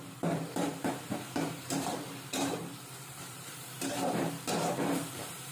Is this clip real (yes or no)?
no